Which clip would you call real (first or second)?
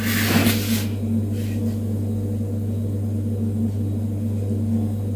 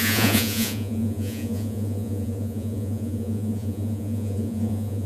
first